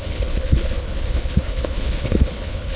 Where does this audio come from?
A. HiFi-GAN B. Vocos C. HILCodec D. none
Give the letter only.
C